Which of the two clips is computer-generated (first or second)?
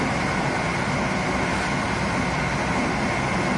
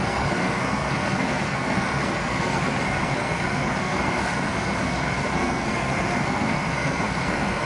second